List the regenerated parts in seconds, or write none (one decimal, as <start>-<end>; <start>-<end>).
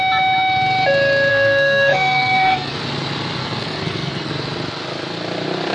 1.3-2.8; 3.4-4.3